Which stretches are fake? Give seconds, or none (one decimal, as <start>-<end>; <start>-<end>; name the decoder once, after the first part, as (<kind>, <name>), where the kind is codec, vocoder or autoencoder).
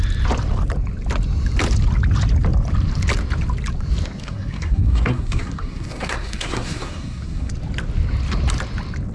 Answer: 4.2-7.5 (codec, SNAC)